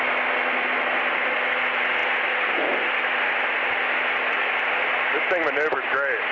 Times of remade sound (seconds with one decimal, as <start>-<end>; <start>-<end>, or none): none